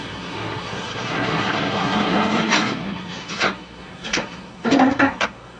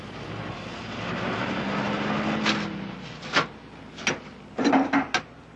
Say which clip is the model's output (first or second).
first